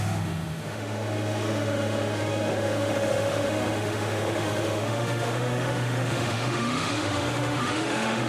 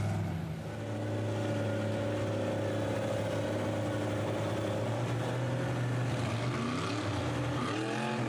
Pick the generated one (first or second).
first